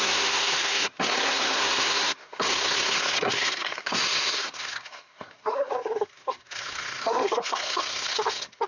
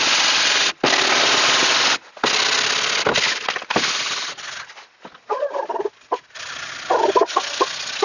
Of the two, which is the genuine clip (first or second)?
second